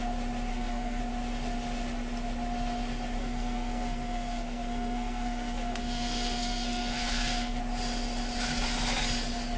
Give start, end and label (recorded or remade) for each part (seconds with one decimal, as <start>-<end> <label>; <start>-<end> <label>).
0.0-0.5 recorded; 0.5-1.0 remade; 1.0-3.2 recorded; 3.2-7.6 remade; 7.6-9.6 recorded